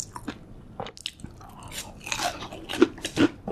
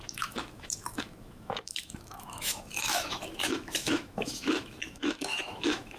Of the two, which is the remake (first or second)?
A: second